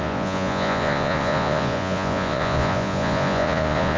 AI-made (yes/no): yes